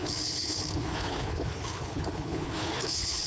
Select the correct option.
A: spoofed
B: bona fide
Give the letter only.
A